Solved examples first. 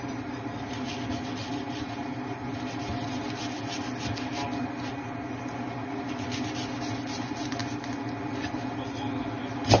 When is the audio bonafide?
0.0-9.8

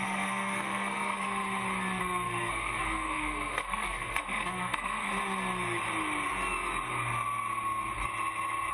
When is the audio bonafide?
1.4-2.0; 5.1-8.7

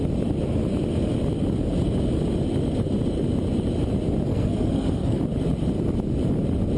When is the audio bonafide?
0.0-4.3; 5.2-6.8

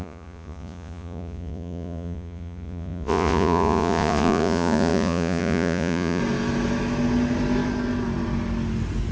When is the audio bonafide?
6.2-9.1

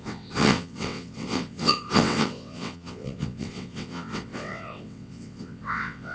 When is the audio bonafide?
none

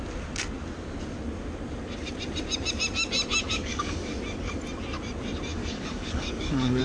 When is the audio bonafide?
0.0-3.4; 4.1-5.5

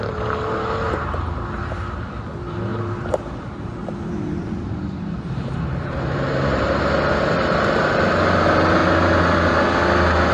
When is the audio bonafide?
0.0-2.7; 6.8-10.3